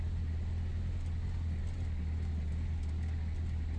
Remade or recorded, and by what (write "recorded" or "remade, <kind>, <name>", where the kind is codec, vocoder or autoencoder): recorded